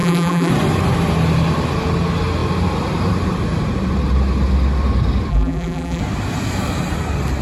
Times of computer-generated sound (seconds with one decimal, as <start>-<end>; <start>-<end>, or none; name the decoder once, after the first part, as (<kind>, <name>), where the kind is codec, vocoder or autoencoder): 0.0-0.5 (vocoder, BigVGAN v2); 5.3-6.0